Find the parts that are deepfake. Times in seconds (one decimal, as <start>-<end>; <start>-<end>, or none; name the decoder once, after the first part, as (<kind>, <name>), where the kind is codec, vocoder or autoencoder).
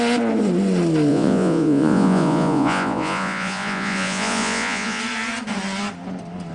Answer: 1.1-5.0 (vocoder, Vocos)